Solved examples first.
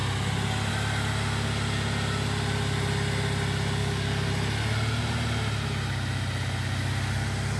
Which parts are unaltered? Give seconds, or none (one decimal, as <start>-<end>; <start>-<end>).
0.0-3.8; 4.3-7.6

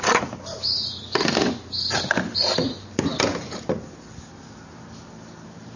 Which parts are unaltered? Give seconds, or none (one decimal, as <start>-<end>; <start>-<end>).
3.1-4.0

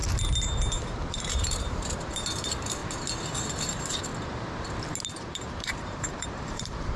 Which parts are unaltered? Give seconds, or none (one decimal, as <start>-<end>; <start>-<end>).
0.0-1.1; 2.8-3.6; 4.1-5.1

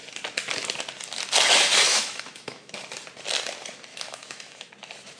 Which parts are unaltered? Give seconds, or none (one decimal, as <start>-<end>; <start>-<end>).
0.0-1.9; 2.7-3.9; 4.7-5.2

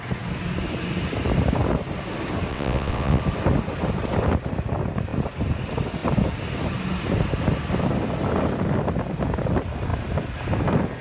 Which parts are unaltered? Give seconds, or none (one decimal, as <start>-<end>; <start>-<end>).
0.0-2.5; 3.2-11.0